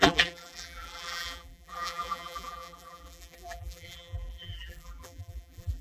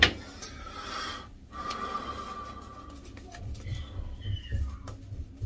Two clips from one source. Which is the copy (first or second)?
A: first